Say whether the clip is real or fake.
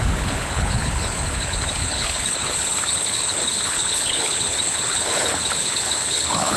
fake